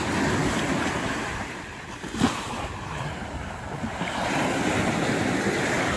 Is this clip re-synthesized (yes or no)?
no